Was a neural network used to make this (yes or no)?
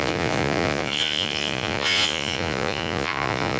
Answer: yes